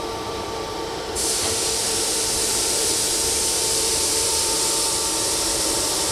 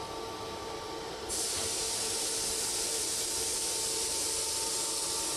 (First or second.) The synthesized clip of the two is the first